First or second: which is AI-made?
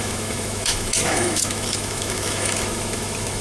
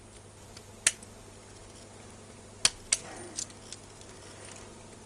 first